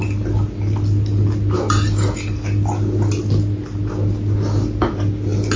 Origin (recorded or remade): recorded